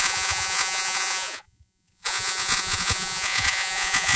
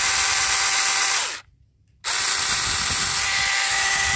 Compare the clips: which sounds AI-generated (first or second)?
first